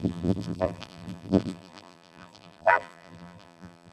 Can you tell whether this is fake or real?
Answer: fake